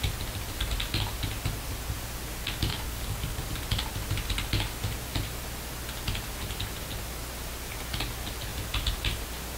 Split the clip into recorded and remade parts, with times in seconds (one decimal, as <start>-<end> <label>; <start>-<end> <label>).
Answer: 0.0-2.7 recorded; 2.7-3.4 remade; 3.4-9.6 recorded